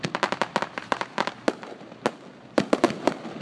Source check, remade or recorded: recorded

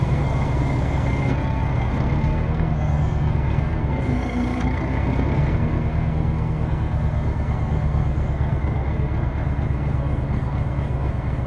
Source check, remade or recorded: remade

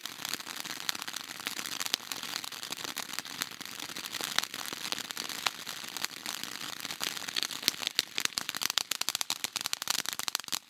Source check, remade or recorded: recorded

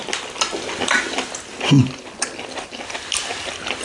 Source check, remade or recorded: recorded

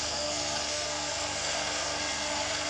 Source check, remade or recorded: remade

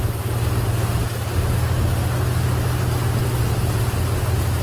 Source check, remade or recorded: recorded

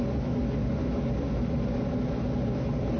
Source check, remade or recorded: recorded